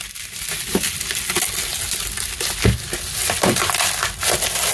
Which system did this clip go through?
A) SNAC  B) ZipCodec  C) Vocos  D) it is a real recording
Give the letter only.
D